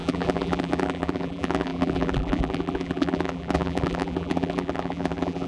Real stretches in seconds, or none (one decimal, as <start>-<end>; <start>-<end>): none